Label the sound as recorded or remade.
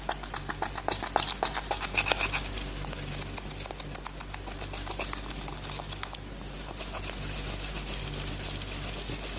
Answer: recorded